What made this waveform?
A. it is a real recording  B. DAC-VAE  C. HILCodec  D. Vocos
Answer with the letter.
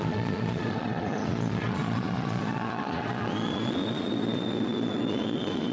D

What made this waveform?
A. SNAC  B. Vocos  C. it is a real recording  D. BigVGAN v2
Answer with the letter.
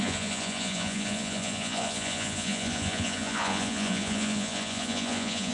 B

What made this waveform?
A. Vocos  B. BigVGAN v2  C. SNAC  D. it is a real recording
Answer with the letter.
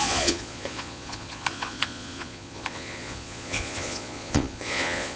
A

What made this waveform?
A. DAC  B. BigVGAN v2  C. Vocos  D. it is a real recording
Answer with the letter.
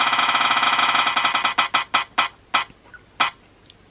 D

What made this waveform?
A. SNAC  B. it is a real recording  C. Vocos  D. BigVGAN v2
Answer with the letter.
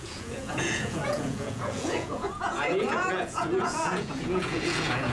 C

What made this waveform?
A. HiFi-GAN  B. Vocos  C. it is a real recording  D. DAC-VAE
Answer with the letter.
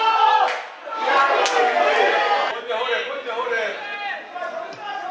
C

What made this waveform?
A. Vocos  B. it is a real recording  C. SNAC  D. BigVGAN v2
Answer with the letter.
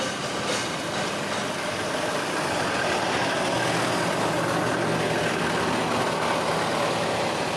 B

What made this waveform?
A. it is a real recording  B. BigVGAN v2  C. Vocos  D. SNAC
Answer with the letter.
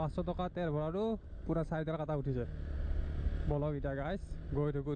A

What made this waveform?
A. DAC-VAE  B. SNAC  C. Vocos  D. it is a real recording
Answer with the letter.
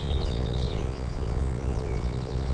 C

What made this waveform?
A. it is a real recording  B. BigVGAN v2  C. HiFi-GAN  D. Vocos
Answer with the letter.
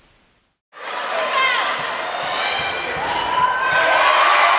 A